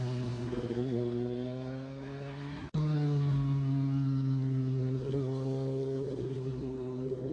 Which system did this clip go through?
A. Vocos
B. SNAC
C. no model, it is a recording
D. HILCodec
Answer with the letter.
B